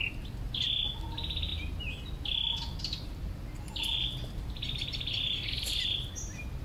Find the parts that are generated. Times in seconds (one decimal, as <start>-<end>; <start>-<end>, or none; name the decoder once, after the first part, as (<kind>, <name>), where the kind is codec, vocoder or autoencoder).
none